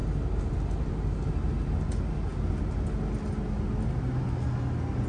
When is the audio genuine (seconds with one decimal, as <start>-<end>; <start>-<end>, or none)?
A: 0.0-5.1